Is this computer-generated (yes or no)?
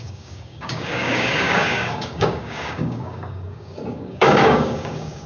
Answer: yes